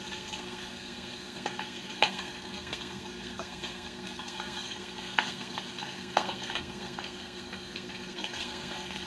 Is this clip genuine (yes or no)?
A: no